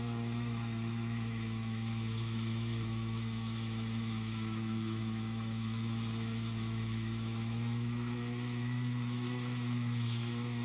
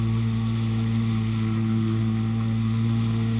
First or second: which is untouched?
second